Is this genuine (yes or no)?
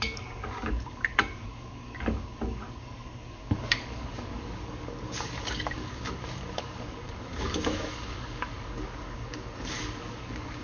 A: no